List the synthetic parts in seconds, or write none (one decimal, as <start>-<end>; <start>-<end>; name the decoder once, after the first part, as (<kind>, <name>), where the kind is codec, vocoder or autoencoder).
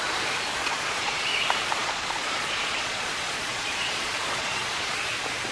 0.6-1.2 (vocoder, Vocos); 1.8-5.1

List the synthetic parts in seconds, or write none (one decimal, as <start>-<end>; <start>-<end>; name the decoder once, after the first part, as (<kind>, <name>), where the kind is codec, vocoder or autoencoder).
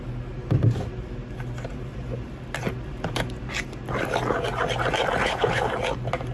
5.2-5.7 (codec, HILCodec)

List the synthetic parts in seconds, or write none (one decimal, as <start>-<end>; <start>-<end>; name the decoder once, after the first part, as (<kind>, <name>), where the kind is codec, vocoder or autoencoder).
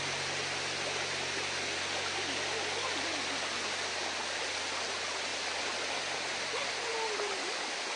none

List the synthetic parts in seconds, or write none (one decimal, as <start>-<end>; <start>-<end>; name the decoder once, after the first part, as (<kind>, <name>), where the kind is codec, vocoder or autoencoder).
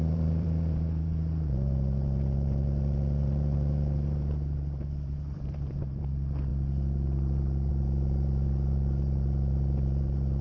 0.0-6.5 (vocoder, BigVGAN v2); 7.7-10.4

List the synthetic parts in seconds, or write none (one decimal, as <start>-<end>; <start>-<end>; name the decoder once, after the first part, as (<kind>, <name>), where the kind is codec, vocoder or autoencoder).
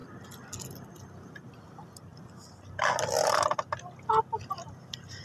none